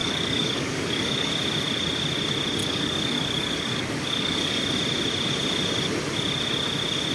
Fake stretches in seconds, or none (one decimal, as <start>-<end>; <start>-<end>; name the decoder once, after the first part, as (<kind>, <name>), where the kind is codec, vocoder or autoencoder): 0.0-1.3 (codec, DAC); 2.6-4.6